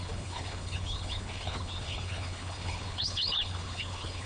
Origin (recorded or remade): remade